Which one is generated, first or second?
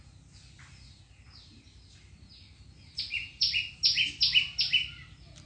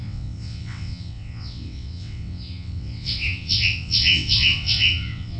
second